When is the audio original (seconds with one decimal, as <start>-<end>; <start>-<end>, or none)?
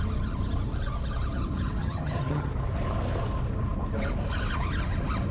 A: 0.0-1.8; 2.5-5.3